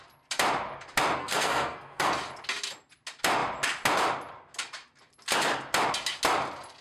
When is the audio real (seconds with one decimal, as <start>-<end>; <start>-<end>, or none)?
0.0-1.2; 2.1-6.8

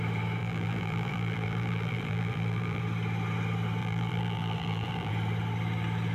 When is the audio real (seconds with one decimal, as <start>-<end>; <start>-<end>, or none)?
0.0-0.4; 2.8-3.8; 5.1-6.1

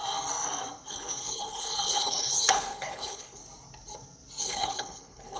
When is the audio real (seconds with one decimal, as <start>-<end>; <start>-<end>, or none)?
0.0-0.9; 3.4-4.4

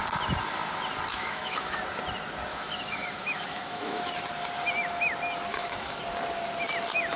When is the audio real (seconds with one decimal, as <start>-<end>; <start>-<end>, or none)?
0.0-1.1; 1.8-2.5; 4.1-5.5; 6.0-7.2

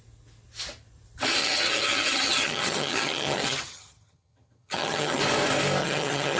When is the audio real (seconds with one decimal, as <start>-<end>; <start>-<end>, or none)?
0.0-1.4; 5.2-5.8